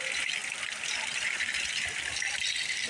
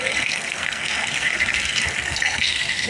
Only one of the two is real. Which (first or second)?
first